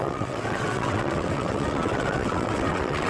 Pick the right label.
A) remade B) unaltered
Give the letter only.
A